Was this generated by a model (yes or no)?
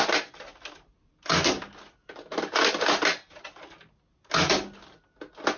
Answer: no